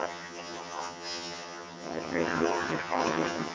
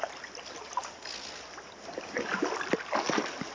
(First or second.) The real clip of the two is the second